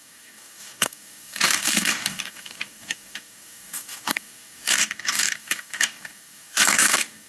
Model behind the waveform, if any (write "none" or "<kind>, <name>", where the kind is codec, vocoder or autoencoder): codec, DAC